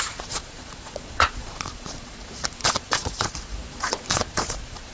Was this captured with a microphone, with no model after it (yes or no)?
no